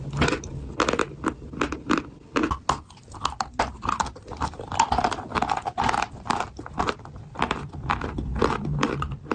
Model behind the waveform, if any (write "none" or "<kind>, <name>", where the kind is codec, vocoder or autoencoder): none